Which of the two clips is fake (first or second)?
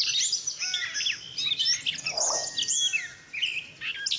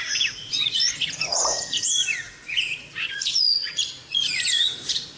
second